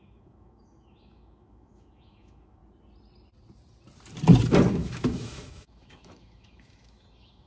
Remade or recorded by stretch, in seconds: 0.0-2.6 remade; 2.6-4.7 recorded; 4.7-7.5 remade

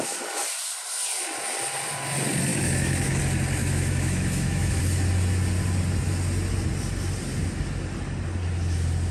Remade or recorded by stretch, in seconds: 0.0-2.5 recorded; 2.5-3.2 remade; 3.2-3.6 recorded; 3.6-4.8 remade; 4.8-9.1 recorded

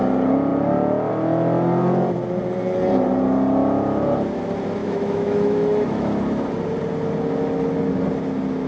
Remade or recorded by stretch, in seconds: 0.0-4.8 recorded; 4.8-6.2 remade; 6.2-8.7 recorded

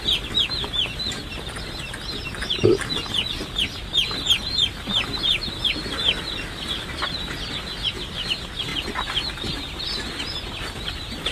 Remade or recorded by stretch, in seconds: 0.0-11.3 recorded

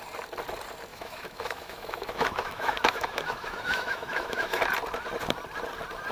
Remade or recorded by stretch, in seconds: 0.0-0.9 recorded; 0.9-4.6 remade; 4.6-6.1 recorded

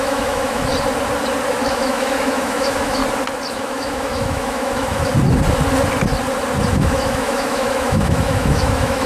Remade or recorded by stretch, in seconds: 0.0-0.7 remade; 0.7-1.5 recorded; 1.5-3.0 remade; 3.0-3.5 recorded; 3.5-5.1 remade; 5.1-6.7 recorded; 6.7-9.1 remade